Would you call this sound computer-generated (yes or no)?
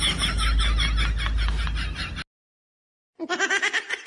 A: no